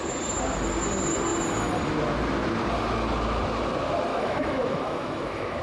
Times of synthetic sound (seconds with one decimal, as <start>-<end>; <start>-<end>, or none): 4.1-5.6